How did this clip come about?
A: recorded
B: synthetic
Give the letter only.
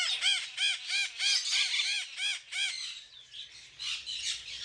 A